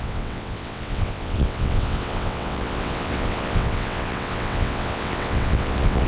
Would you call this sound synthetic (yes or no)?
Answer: yes